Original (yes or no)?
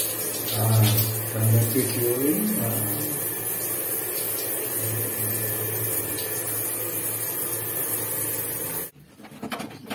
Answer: yes